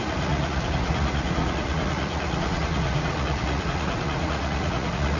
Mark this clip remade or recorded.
remade